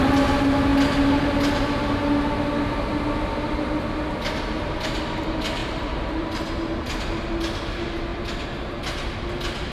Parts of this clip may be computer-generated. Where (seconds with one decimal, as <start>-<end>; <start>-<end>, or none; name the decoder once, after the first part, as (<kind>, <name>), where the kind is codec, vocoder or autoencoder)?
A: 5.6-7.3 (vocoder, BigVGAN v2)